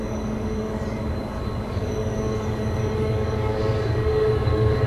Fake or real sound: fake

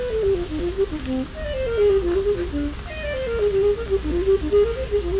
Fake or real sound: real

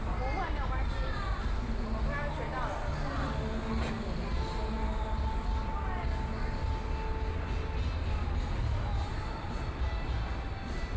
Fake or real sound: real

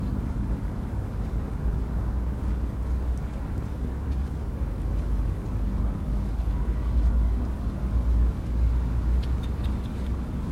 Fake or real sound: fake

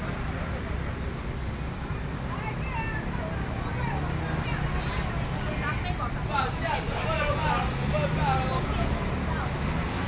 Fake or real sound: real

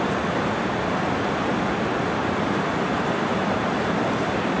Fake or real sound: real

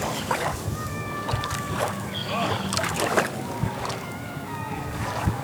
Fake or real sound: fake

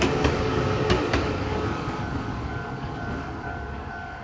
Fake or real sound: fake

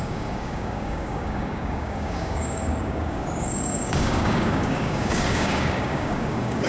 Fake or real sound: fake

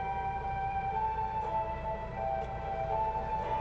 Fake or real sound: real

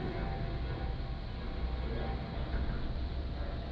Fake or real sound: real